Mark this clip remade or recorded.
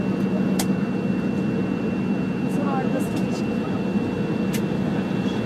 recorded